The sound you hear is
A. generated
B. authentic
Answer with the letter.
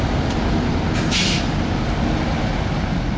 B